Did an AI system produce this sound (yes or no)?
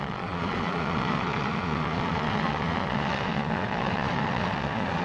yes